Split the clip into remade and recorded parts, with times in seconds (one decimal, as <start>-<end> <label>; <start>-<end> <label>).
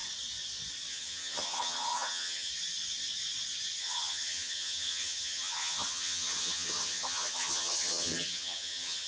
0.0-0.9 recorded; 0.9-2.5 remade; 2.5-3.8 recorded; 3.8-9.1 remade